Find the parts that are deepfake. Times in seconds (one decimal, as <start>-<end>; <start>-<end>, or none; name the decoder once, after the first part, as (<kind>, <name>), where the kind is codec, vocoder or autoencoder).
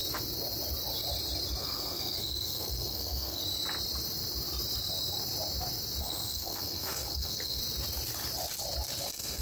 1.6-3.4 (codec, SNAC); 6.0-7.6; 9.0-9.4